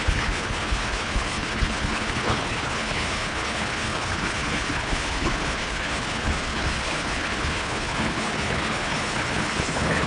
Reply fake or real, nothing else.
fake